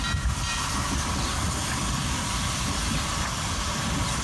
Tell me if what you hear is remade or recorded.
remade